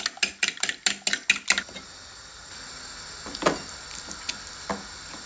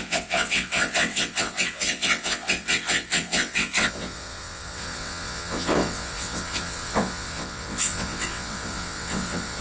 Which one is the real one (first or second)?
first